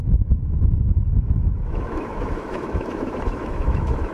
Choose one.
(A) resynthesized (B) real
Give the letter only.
A